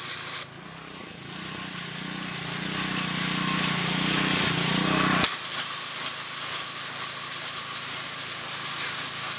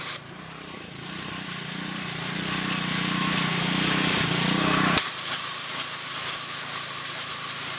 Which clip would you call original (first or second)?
first